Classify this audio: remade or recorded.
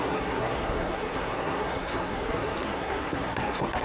remade